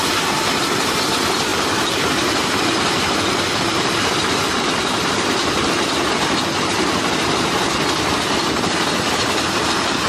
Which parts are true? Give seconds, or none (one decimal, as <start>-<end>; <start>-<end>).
0.0-10.1